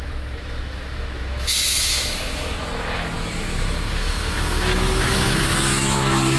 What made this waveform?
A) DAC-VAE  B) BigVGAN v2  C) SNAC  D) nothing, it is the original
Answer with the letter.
A